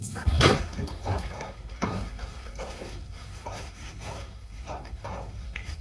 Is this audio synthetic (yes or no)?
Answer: yes